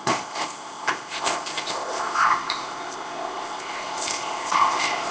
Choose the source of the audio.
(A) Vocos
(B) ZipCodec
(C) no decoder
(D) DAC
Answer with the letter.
B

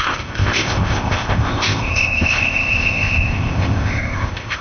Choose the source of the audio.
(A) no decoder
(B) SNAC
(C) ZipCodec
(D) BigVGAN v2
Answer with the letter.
C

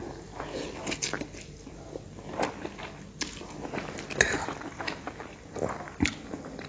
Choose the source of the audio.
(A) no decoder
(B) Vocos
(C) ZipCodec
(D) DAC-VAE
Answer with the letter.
A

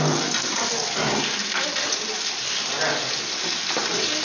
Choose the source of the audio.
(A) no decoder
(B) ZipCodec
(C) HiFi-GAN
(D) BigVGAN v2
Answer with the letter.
A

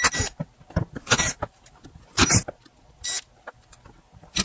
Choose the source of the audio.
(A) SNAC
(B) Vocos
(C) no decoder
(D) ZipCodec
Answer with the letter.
C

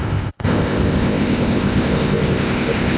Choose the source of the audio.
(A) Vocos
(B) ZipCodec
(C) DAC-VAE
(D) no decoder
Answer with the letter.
B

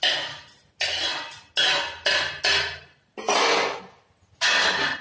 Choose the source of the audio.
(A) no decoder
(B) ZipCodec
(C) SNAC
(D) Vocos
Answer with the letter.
A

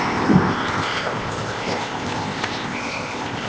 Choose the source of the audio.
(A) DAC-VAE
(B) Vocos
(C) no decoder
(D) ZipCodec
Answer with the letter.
D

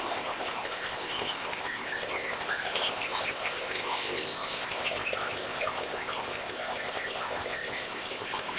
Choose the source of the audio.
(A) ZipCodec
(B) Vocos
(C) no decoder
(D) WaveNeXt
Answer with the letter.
A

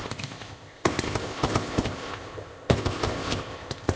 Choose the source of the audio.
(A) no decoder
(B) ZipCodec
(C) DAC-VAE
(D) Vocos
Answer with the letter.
B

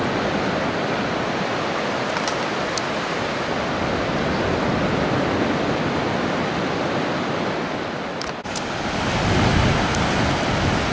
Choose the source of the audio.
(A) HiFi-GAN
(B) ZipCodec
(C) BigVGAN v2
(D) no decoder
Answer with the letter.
D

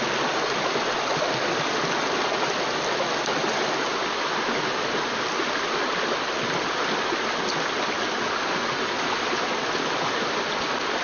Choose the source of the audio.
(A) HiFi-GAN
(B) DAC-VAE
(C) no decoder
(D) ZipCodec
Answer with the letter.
C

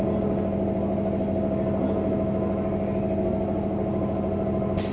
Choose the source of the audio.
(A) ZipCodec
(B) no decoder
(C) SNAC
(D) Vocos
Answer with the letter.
B